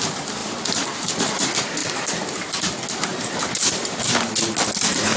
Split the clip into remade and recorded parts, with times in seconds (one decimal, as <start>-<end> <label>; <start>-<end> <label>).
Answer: 0.0-0.4 recorded; 0.4-1.1 remade; 1.1-1.8 recorded; 1.8-2.6 remade; 2.6-3.1 recorded; 3.1-4.3 remade; 4.3-5.2 recorded